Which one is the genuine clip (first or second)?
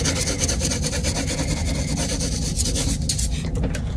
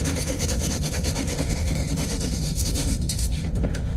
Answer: first